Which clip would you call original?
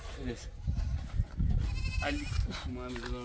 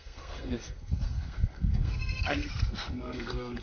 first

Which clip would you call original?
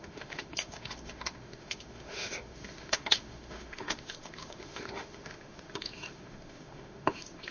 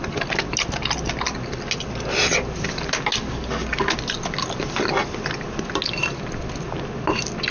second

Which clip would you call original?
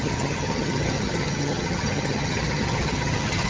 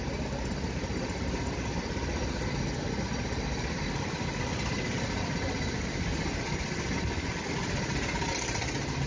second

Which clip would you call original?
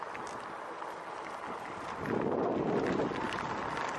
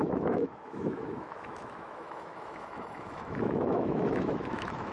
first